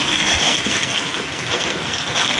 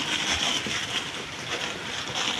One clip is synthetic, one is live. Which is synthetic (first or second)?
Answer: first